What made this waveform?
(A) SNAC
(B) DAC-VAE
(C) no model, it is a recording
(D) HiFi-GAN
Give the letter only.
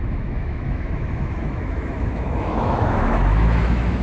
B